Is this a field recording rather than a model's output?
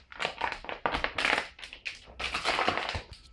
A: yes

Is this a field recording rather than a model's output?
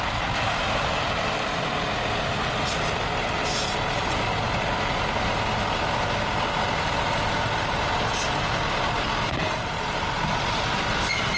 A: yes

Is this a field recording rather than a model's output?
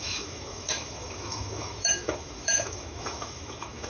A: no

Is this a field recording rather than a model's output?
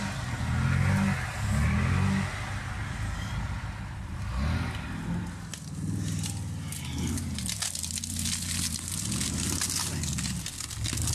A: yes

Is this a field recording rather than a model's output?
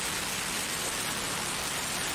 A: yes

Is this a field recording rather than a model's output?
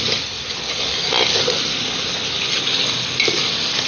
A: yes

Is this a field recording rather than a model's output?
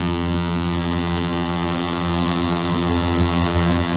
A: no